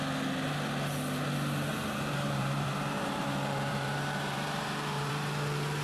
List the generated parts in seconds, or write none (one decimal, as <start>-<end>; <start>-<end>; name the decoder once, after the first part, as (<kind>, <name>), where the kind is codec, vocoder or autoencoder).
1.7-5.1 (vocoder, BigVGAN v2)